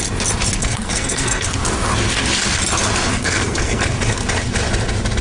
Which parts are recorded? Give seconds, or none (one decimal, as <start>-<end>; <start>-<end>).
0.0-0.6; 1.5-3.2; 3.8-5.2